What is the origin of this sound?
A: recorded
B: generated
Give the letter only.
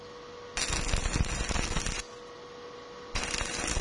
A